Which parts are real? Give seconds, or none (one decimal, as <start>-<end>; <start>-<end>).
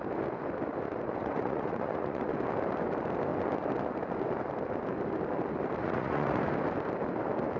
0.0-1.2; 2.3-5.8; 6.4-7.6